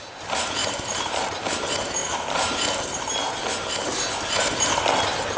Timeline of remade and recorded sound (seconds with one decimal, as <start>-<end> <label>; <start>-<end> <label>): 0.0-0.6 recorded; 0.6-1.4 remade; 1.4-2.0 recorded; 2.0-3.0 remade; 3.0-5.4 recorded

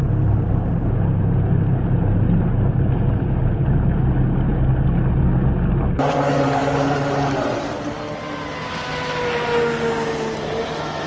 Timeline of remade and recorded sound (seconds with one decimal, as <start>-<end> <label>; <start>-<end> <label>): 0.0-11.1 recorded

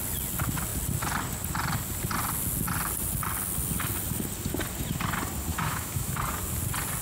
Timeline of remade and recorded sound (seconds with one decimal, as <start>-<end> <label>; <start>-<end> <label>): 0.0-5.5 recorded; 5.5-6.1 remade; 6.1-7.0 recorded

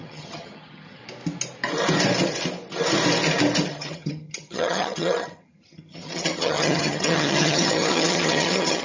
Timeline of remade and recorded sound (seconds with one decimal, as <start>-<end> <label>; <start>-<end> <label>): 0.0-1.0 remade; 1.0-3.7 recorded; 3.7-8.8 remade

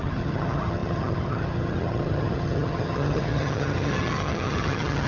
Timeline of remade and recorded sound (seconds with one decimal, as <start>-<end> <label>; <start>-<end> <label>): 0.0-5.1 remade

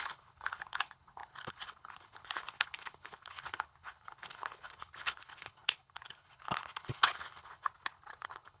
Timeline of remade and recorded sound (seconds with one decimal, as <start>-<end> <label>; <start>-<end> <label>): 0.0-8.6 remade